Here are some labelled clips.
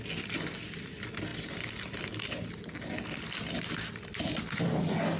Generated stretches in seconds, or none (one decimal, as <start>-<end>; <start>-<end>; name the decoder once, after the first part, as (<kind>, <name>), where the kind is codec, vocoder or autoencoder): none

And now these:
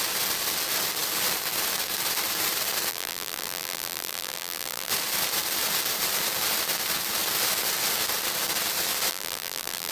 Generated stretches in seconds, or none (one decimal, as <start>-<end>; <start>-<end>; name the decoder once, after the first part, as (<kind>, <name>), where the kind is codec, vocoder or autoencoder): 2.9-4.9 (vocoder, BigVGAN v2); 9.1-9.9

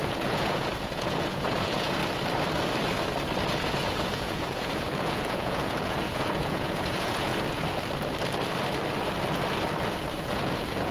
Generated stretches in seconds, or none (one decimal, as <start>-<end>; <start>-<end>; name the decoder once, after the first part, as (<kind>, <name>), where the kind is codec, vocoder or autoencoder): 0.0-2.0 (vocoder, Vocos); 3.5-7.3; 10.2-10.9

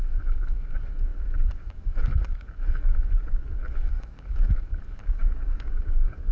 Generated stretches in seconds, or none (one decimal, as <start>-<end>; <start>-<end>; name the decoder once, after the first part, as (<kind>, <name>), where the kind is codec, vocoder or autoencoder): 0.0-6.3 (codec, DAC)